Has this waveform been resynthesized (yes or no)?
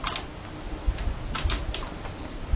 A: no